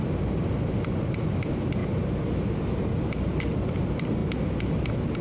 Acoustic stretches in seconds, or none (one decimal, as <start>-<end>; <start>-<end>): 0.0-5.2